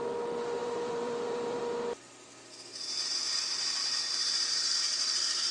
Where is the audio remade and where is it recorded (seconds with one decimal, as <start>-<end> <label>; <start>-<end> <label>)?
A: 0.0-0.6 recorded; 0.6-1.6 remade; 1.6-2.7 recorded; 2.7-5.5 remade